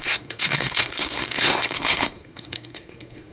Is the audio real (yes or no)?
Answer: no